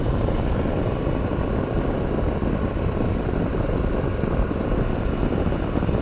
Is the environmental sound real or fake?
real